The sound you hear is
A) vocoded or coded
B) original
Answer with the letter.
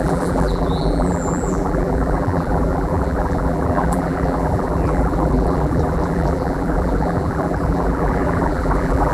A